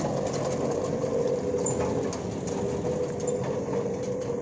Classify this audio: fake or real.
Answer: real